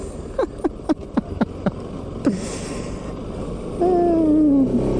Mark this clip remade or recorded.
recorded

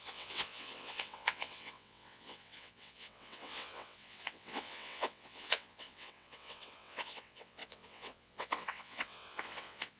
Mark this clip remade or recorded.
remade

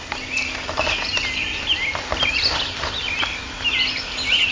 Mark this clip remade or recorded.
recorded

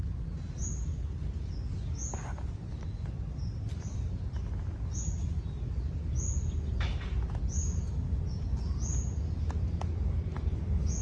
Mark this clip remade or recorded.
recorded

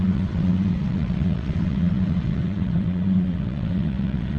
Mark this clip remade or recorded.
remade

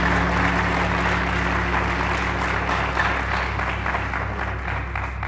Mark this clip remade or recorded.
recorded